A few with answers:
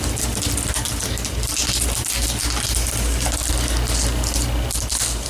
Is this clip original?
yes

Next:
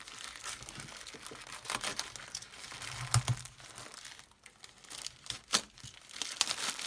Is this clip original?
yes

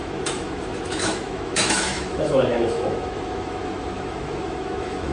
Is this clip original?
no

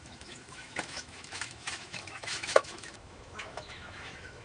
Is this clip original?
no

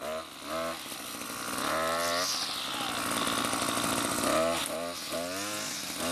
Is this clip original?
yes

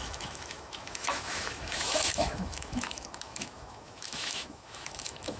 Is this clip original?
no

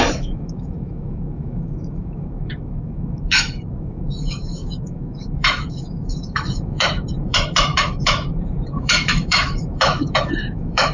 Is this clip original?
no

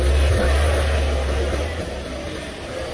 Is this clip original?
yes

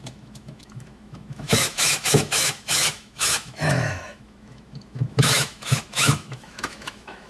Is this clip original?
no